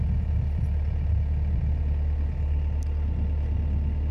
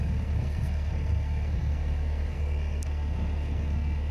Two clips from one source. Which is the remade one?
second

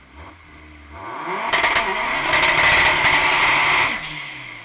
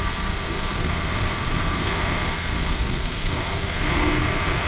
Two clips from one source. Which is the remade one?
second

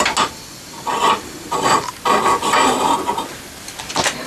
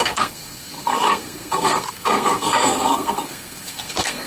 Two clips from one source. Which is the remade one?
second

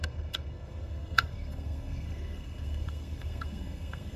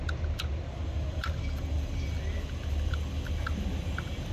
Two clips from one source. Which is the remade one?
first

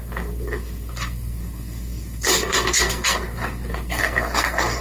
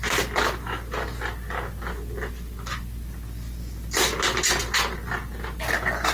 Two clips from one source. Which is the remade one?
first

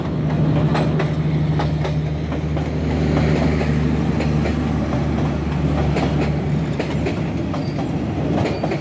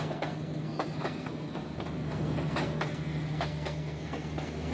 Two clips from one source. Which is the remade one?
second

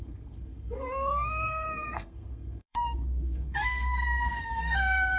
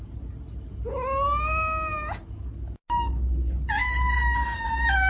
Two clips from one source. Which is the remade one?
first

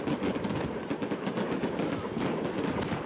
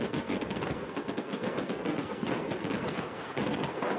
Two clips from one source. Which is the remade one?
second